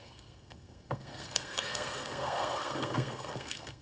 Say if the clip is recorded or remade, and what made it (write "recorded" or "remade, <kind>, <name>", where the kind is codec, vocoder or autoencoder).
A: remade, codec, SNAC